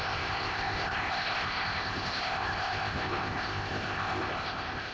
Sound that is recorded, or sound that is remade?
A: remade